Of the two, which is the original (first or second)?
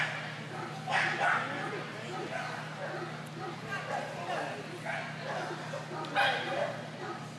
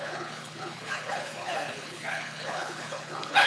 first